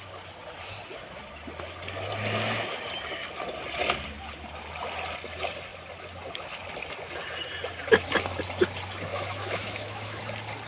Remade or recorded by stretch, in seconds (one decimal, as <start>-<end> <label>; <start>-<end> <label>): 0.0-9.1 recorded; 9.1-10.2 remade; 10.2-10.7 recorded